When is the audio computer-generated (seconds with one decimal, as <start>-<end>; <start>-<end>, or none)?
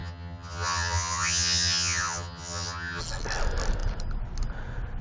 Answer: 0.0-3.0